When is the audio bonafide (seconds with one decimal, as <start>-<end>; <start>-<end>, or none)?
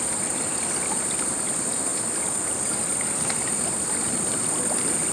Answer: 0.0-5.1